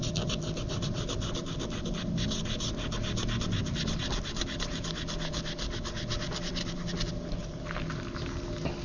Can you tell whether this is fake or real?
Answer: real